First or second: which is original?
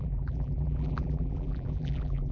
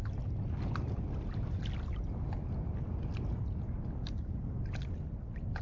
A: second